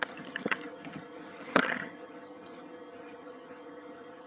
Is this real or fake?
fake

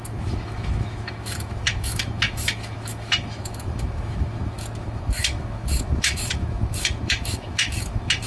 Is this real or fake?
fake